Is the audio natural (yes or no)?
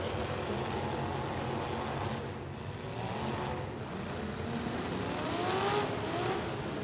yes